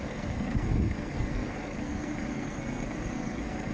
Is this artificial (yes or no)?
yes